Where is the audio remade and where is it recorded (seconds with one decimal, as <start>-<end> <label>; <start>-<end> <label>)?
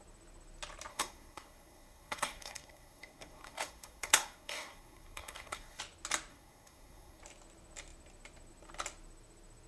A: 0.0-0.9 recorded; 0.9-5.8 remade; 5.8-6.3 recorded; 6.3-7.2 remade; 7.2-9.7 recorded